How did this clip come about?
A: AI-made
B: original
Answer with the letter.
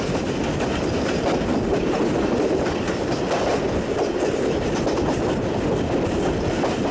B